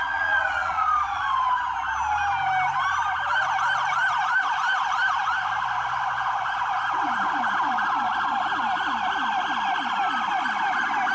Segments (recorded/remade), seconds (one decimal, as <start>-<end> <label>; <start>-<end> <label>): 0.0-1.6 remade; 1.6-11.1 recorded